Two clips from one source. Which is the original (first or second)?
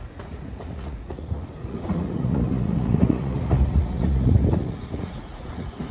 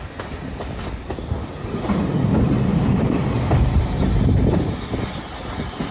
second